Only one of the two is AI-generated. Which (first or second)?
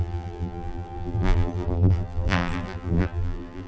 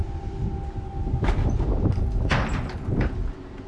first